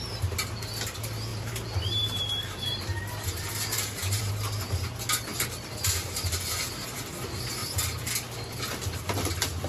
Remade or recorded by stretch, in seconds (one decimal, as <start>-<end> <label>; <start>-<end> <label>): 0.0-1.3 recorded; 1.3-4.3 remade; 4.3-5.3 recorded; 5.3-6.7 remade; 6.7-9.7 recorded

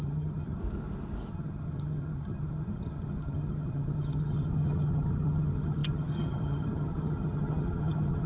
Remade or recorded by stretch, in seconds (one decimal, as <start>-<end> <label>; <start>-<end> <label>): 0.0-0.6 remade; 0.6-1.3 recorded; 1.3-8.3 remade

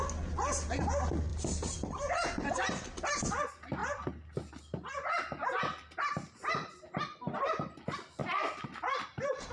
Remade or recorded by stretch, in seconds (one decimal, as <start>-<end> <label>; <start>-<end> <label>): 0.0-1.3 recorded; 1.3-2.0 remade; 2.0-3.8 recorded; 3.8-4.5 remade; 4.5-8.2 recorded; 8.2-8.7 remade; 8.7-9.5 recorded

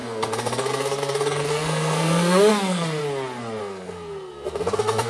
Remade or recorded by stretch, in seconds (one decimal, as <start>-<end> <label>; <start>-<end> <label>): 0.0-3.0 remade; 3.0-3.6 recorded; 3.6-5.1 remade

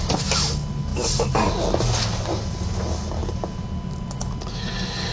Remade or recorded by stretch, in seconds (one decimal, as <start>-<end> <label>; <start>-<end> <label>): 0.0-5.1 recorded